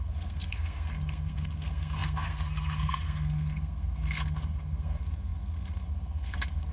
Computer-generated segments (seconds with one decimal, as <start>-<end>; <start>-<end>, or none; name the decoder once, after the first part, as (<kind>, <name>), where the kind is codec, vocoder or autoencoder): 0.0-6.7 (codec, SNAC)